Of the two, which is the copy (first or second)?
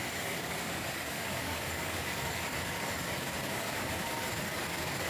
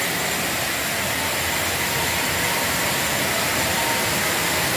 first